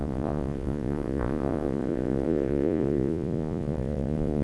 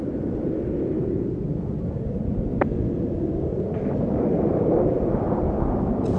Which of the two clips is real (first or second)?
second